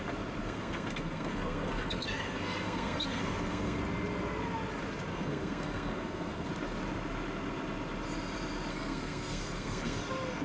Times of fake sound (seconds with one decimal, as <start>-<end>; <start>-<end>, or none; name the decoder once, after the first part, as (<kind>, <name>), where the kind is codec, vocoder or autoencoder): 0.4-3.8 (codec, SNAC); 5.1-6.5; 8.7-10.0